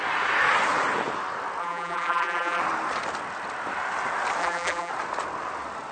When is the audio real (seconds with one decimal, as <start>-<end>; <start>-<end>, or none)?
0.0-1.6; 2.6-4.4; 4.9-5.9